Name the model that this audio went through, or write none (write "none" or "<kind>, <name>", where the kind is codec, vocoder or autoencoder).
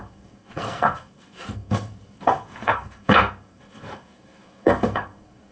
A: codec, SNAC